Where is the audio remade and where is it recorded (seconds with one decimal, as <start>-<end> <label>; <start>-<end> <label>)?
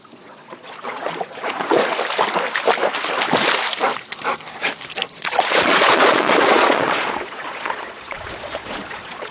0.0-1.9 remade; 1.9-5.1 recorded; 5.1-9.3 remade